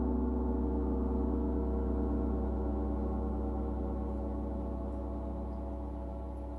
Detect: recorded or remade recorded